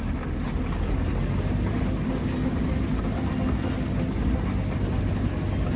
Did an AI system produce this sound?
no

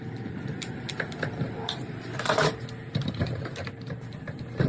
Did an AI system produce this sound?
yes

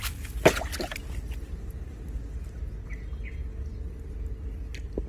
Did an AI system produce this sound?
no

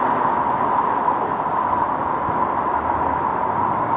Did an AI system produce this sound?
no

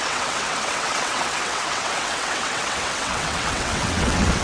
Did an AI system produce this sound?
yes